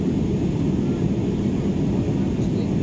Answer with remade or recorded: recorded